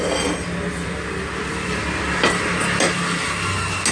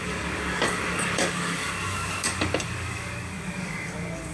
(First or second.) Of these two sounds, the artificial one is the second